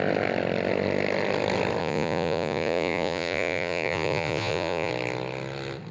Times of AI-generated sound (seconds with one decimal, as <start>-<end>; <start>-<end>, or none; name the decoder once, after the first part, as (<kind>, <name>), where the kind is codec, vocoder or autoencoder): 1.8-4.9 (vocoder, Vocos)